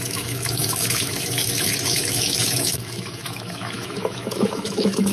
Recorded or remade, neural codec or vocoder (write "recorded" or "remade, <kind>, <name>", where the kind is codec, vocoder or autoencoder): remade, autoencoder, DAC-VAE